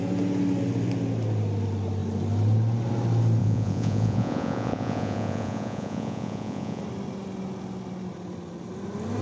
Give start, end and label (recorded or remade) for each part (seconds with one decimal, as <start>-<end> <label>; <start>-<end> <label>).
0.0-3.4 recorded; 3.4-6.8 remade; 6.8-9.2 recorded